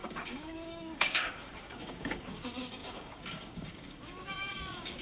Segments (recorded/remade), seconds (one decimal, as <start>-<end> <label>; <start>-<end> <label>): 0.0-5.0 remade